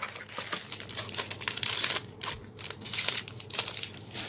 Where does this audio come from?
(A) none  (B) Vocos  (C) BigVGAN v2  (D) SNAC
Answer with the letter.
A